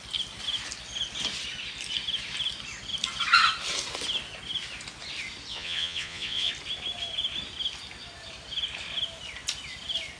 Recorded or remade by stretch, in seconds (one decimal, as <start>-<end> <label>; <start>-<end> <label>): 0.0-5.5 recorded; 5.5-6.5 remade; 6.5-10.2 recorded